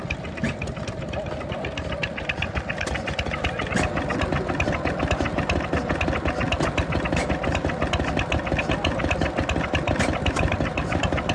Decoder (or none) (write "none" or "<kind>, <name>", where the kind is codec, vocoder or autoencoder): none